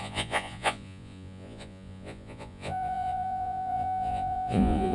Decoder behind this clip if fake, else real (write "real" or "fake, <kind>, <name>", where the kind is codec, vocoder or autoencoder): fake, vocoder, Vocos